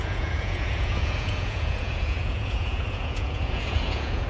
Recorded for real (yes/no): no